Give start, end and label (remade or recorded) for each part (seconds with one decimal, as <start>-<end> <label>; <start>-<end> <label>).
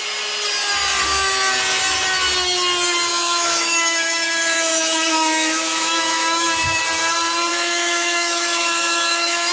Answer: 0.0-3.1 recorded; 3.1-6.8 remade; 6.8-7.5 recorded; 7.5-9.5 remade